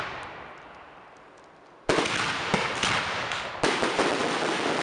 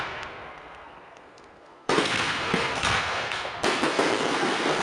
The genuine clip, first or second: first